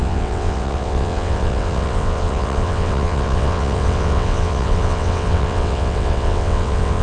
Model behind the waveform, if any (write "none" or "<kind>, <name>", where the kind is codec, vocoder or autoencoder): vocoder, WaveNeXt